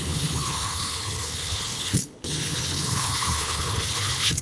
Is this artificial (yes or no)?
yes